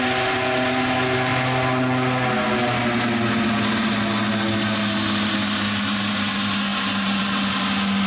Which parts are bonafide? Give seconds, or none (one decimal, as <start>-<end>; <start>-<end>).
0.0-8.1